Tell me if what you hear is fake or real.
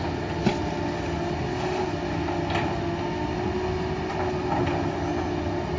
real